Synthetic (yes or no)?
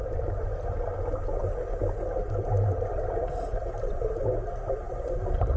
no